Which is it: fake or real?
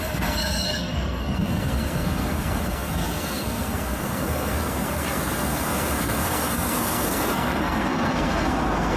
fake